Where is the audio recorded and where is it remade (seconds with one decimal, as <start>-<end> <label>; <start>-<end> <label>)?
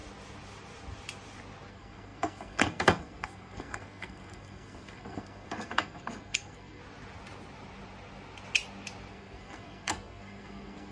0.0-1.7 recorded; 1.7-6.8 remade; 6.8-9.1 recorded; 9.1-10.9 remade